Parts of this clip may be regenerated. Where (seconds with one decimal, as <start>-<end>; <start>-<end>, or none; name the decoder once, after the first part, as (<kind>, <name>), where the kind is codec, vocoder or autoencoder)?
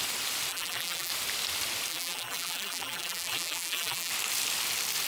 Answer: 0.5-1.1 (vocoder, BigVGAN v2); 1.9-4.1